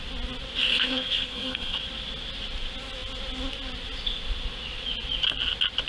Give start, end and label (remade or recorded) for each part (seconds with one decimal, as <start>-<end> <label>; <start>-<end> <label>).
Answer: 0.0-0.7 recorded; 0.7-1.8 remade; 1.8-5.9 recorded

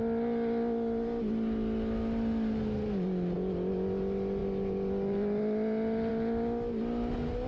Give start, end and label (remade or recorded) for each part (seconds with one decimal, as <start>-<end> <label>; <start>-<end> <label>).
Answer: 0.0-7.5 recorded

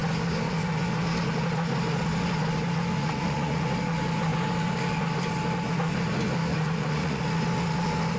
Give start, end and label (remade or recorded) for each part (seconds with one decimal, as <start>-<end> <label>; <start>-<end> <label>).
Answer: 0.0-3.0 recorded; 3.0-3.6 remade; 3.6-6.5 recorded; 6.5-7.2 remade; 7.2-8.2 recorded

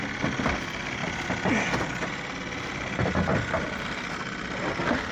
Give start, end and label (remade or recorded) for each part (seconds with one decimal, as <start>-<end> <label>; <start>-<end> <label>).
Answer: 0.0-5.1 recorded

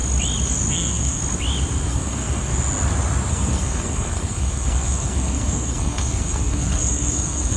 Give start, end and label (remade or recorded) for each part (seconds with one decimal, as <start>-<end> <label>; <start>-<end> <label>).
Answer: 0.0-0.7 recorded; 0.7-1.2 remade; 1.2-1.9 recorded; 1.9-2.5 remade; 2.5-3.3 recorded; 3.3-7.6 remade